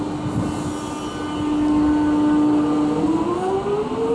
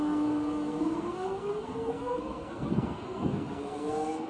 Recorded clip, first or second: first